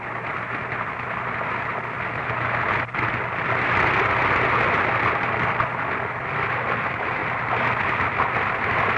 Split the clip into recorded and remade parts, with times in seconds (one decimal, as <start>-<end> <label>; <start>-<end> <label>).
0.0-9.0 recorded